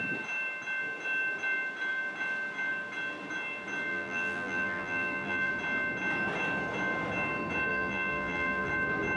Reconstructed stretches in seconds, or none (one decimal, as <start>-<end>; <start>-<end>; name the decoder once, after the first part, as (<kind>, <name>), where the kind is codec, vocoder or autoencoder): 3.9-5.5 (vocoder, BigVGAN v2); 7.7-8.7